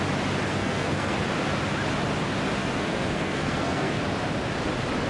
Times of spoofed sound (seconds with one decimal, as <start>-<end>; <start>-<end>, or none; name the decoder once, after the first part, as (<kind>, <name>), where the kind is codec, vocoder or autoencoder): 0.5-1.2 (codec, SNAC); 2.6-4.0